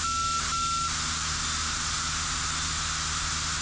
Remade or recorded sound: recorded